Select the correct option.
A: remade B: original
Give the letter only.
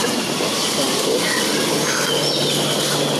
B